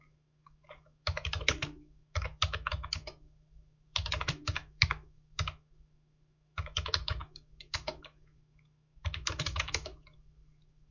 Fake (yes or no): yes